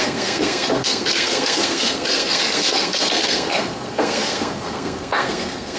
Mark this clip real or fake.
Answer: fake